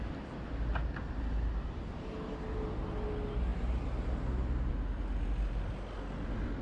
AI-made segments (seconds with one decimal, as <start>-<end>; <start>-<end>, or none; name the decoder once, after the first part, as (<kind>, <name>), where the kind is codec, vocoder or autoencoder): none